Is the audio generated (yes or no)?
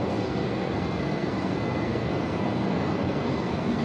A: yes